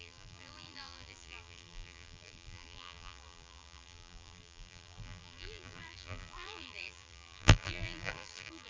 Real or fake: fake